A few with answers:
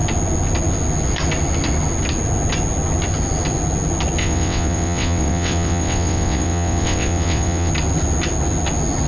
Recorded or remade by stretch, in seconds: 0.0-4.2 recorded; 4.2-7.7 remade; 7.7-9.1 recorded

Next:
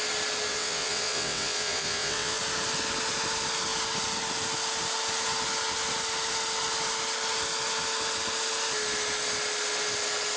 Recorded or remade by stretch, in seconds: 0.0-0.5 recorded; 0.5-2.4 remade; 2.4-10.4 recorded

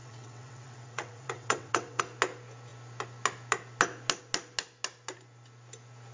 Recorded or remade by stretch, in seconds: 0.0-2.0 remade; 2.0-6.1 recorded

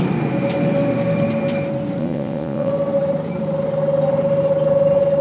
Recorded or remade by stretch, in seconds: 0.0-2.0 recorded; 2.0-2.7 remade; 2.7-5.2 recorded

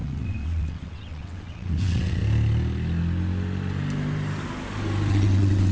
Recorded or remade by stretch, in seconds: 0.0-2.2 remade; 2.2-5.1 recorded; 5.1-5.7 remade